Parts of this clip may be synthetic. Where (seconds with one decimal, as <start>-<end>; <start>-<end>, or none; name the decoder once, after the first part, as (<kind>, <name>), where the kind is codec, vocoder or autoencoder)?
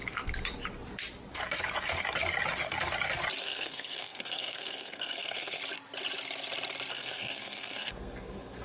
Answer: 3.4-5.6 (codec, SNAC); 6.9-8.6